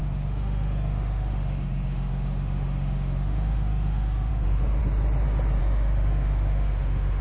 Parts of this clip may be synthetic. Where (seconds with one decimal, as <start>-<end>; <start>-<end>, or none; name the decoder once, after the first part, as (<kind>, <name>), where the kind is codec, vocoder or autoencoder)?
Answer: 0.0-4.8 (autoencoder, DAC-VAE); 5.6-7.2